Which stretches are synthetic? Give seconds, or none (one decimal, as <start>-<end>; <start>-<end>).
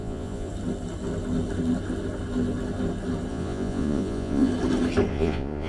0.0-0.5; 3.3-4.5; 5.1-5.7